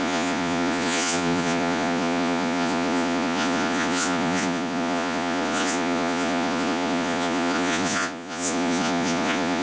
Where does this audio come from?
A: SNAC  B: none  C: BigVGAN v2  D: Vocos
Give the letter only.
D